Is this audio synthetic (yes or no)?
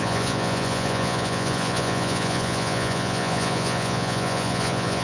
yes